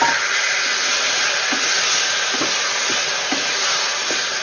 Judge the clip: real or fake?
real